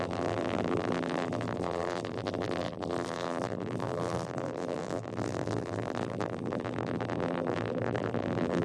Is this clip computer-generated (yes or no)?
yes